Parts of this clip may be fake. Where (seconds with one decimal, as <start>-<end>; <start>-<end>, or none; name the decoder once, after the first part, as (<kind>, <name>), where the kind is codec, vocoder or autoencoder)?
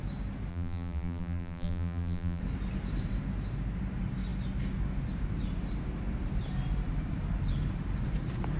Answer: 0.5-2.4 (vocoder, BigVGAN v2)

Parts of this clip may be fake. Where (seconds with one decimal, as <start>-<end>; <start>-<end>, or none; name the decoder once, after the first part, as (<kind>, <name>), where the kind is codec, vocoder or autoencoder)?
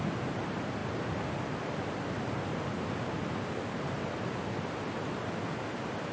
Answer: none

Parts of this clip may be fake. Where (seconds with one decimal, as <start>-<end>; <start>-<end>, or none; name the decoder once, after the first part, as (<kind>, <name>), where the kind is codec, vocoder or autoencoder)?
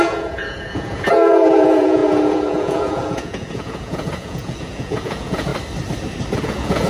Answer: 0.0-5.5 (vocoder, Vocos); 6.4-6.9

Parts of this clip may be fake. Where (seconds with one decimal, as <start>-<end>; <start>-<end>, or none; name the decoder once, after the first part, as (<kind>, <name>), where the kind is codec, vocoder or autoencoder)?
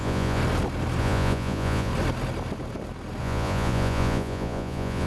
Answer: 0.0-0.4 (vocoder, Vocos); 1.0-1.9; 3.2-5.1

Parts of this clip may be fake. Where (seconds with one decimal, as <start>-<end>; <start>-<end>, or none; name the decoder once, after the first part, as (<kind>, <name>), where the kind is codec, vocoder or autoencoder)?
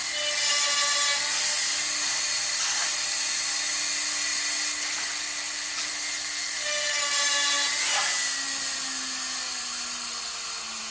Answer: none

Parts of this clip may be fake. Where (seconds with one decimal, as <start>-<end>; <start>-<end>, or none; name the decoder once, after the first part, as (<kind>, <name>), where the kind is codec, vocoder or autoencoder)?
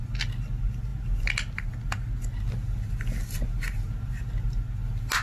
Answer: none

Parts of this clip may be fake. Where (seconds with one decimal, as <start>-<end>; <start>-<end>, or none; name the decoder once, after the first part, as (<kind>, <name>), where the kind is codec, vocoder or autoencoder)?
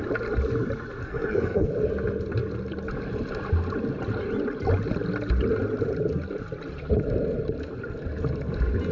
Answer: 1.0-1.7 (codec, SNAC)